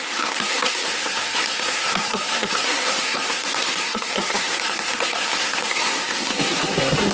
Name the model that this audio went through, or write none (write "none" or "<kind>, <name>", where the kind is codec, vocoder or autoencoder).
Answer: codec, SNAC